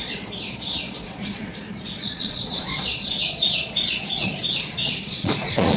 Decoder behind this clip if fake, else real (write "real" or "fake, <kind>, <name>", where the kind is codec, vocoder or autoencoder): fake, vocoder, Vocos